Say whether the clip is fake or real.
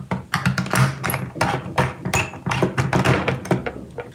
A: real